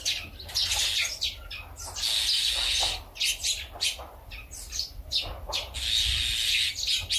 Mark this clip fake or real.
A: real